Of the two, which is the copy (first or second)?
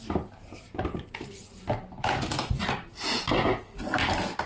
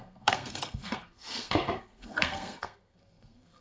second